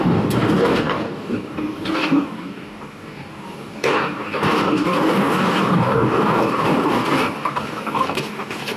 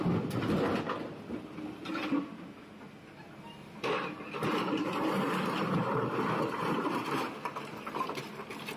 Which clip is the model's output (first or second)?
first